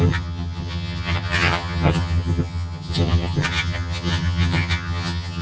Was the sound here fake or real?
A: fake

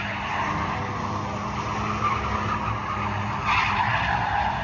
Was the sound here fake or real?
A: real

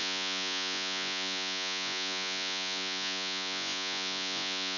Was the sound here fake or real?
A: fake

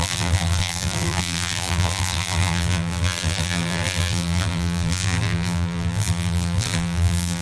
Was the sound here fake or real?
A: fake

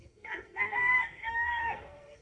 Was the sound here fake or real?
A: fake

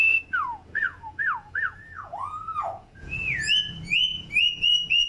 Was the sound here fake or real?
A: fake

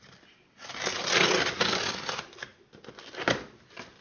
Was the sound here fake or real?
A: real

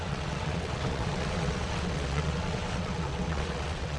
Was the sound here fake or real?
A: fake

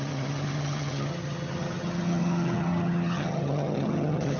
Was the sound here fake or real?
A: fake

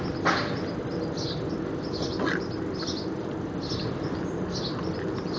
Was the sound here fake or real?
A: real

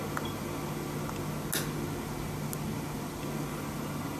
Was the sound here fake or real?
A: real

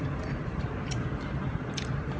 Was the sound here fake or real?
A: fake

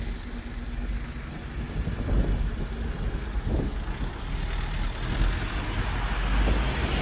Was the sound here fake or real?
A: real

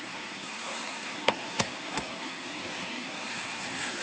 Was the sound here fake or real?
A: fake